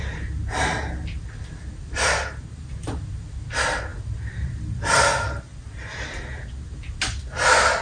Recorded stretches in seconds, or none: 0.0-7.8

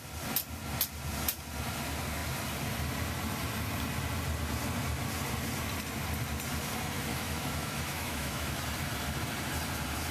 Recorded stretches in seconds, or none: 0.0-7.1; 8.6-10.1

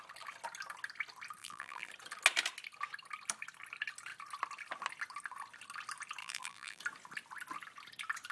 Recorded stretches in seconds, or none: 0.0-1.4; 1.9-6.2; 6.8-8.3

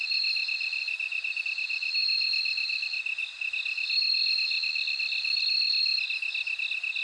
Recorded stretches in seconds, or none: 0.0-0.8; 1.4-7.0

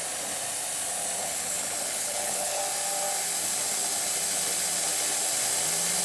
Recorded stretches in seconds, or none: 0.0-1.2; 2.6-6.0

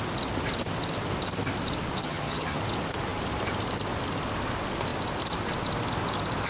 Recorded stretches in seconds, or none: 0.0-2.0; 2.6-6.5

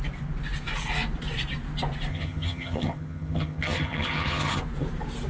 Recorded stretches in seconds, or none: 0.0-2.1; 4.6-5.3

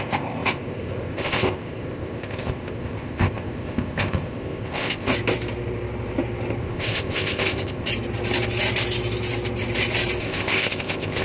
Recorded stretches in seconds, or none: 5.1-6.6; 7.9-10.2